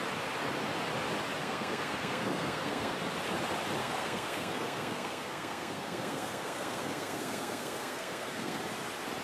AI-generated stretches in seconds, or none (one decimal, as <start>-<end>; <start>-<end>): 1.4-3.0; 3.8-8.6